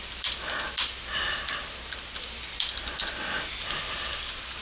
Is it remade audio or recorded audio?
recorded